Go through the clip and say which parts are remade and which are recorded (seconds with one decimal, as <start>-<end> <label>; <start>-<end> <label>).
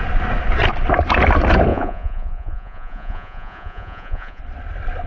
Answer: 0.0-1.7 recorded; 1.7-4.4 remade; 4.4-5.1 recorded